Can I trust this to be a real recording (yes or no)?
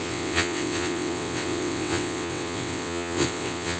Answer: no